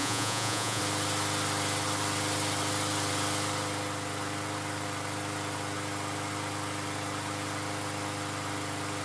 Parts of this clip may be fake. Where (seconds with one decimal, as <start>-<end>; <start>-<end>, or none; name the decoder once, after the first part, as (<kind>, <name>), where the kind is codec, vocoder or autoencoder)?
0.0-0.8 (vocoder, Vocos)